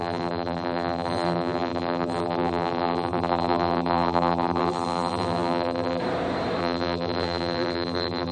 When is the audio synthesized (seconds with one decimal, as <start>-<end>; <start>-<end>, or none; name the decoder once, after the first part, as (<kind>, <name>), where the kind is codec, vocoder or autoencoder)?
0.0-6.0 (vocoder, BigVGAN v2); 6.6-8.3

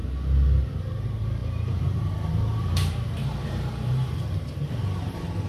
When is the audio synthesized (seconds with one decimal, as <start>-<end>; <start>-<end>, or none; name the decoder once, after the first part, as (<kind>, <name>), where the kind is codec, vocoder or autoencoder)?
0.8-5.5 (vocoder, BigVGAN v2)